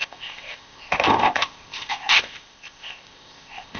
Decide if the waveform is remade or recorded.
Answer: remade